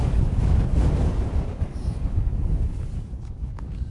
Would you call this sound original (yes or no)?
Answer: no